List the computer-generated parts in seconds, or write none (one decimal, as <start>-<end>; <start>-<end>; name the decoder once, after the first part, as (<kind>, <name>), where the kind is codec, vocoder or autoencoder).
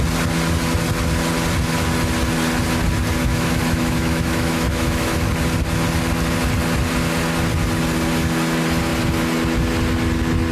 3.2-5.3 (autoencoder, DAC-VAE)